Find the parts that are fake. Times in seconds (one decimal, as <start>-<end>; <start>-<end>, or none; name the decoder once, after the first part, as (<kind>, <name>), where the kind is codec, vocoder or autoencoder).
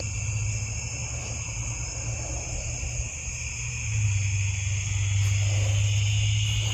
none